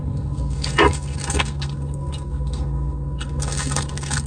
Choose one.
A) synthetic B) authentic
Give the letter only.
A